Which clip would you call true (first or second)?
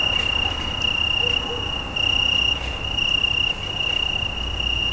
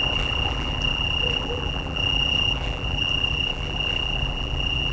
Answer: first